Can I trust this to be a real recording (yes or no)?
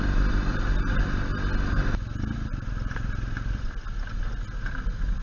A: yes